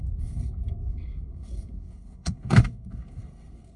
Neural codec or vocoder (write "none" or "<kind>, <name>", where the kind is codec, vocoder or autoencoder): codec, SNAC